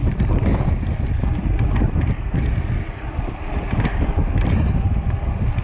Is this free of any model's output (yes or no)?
yes